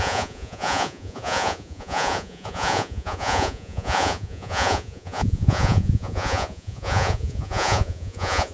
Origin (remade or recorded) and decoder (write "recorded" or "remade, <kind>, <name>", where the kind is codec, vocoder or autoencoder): remade, vocoder, Vocos